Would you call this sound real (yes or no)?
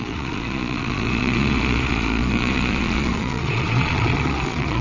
no